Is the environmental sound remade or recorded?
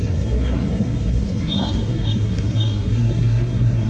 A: remade